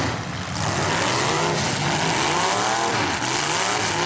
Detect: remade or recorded recorded